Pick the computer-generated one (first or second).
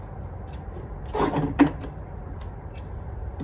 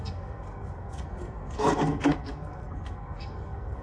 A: second